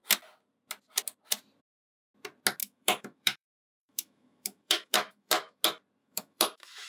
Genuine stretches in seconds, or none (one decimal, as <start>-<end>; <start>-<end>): 0.0-2.6; 5.6-6.0